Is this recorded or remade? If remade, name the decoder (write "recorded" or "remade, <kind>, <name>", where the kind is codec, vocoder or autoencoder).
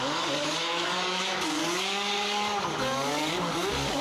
remade, codec, DAC